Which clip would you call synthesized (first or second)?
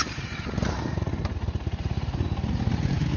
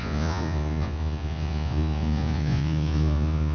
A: second